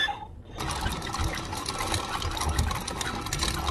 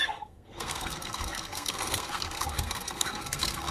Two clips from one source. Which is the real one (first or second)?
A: first